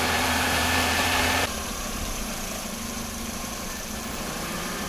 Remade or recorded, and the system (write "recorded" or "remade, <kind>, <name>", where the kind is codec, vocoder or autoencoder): remade, vocoder, BigVGAN v2